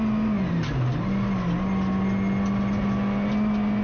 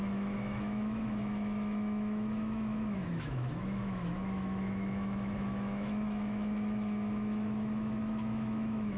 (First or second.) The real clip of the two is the first